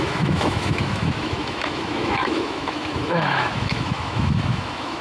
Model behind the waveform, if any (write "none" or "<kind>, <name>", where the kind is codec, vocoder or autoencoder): autoencoder, DAC-VAE